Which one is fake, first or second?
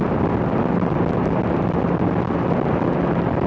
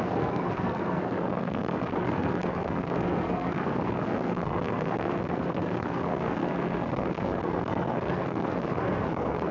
second